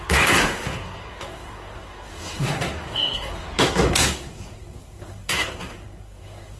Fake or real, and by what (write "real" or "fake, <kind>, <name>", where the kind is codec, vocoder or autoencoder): fake, codec, SNAC